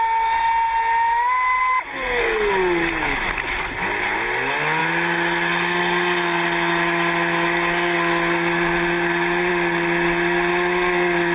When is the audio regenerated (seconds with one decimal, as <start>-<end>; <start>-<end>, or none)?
1.9-2.5